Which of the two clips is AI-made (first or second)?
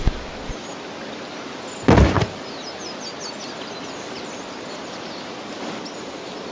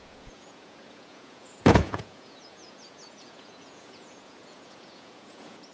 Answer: second